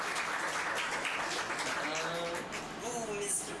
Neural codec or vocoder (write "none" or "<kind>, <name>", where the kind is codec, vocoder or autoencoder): none